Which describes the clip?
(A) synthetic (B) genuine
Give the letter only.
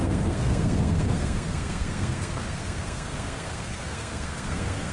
A